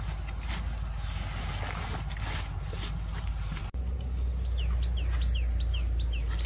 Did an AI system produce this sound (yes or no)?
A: no